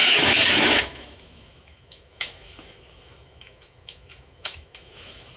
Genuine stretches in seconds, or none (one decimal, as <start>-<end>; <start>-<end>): none